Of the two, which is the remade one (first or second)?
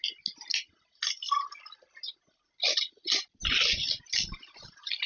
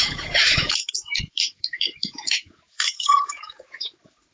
second